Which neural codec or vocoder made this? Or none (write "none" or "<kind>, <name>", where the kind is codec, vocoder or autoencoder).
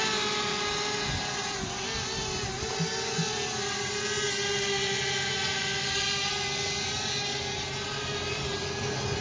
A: none